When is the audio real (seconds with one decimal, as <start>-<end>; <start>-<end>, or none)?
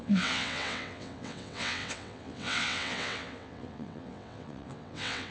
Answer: none